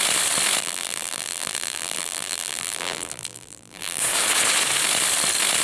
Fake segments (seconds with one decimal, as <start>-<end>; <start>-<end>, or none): 0.6-4.0

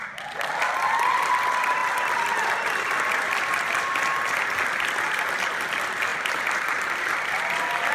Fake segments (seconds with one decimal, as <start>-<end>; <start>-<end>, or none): 6.1-7.4

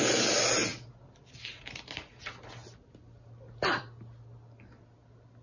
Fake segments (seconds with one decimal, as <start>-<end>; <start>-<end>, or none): none

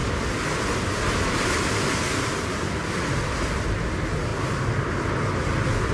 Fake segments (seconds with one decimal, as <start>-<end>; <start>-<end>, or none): none

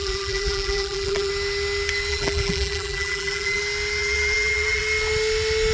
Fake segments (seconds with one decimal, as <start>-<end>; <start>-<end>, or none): 0.0-1.3; 2.1-3.6; 4.0-4.8

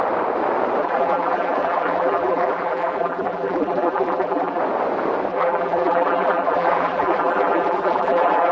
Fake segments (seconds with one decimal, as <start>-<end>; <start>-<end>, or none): 0.8-4.6; 5.3-8.5

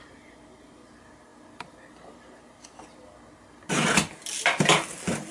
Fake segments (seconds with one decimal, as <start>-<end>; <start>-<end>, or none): none

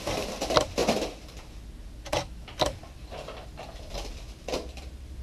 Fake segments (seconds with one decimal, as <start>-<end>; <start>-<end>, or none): 2.8-5.2